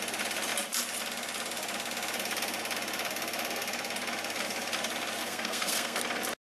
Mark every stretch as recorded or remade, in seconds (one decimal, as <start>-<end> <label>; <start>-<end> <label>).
0.0-5.2 recorded; 5.2-6.0 remade; 6.0-6.5 recorded